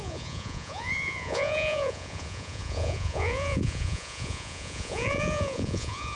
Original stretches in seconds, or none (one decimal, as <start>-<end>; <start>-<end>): none